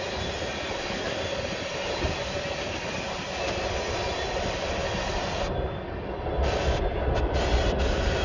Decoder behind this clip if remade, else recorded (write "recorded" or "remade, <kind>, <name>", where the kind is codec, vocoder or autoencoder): recorded